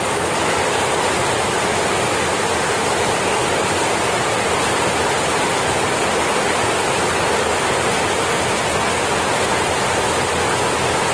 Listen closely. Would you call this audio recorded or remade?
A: recorded